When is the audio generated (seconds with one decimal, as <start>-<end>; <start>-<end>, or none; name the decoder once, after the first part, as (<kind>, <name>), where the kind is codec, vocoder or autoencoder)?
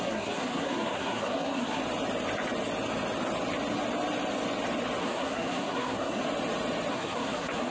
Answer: 0.0-1.8 (codec, SNAC); 5.0-6.2; 6.9-7.7